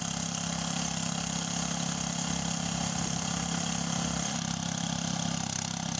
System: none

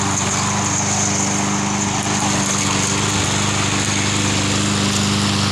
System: none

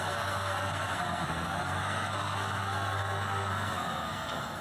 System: codec, SNAC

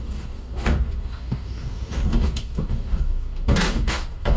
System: codec, DAC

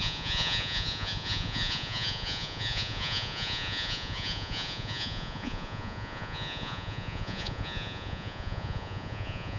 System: vocoder, Vocos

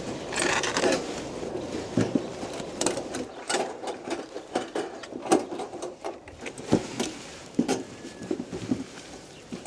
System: vocoder, BigVGAN v2